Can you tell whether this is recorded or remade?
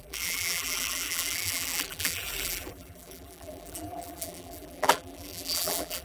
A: remade